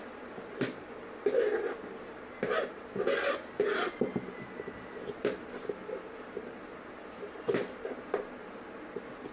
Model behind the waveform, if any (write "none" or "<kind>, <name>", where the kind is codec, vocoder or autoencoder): none